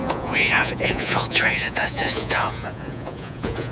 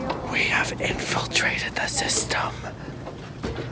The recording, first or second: second